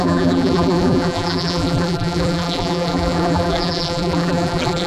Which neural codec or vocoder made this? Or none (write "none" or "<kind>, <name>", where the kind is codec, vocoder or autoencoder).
vocoder, BigVGAN v2